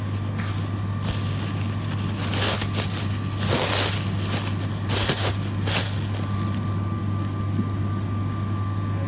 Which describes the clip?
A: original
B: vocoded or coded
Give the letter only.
A